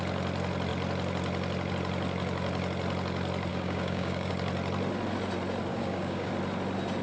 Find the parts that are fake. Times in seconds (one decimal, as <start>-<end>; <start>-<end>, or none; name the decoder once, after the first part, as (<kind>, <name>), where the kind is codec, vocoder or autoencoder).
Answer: 3.5-4.3 (codec, DAC); 5.7-6.3